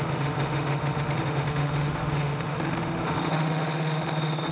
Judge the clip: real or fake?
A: fake